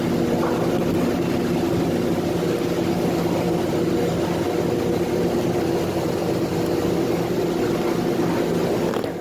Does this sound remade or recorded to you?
recorded